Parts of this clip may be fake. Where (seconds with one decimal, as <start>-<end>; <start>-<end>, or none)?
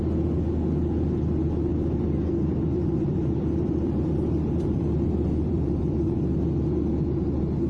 1.7-6.3